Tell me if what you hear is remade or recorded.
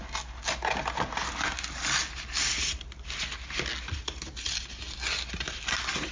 recorded